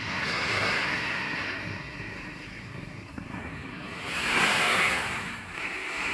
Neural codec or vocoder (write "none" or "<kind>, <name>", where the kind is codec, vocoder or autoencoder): codec, SNAC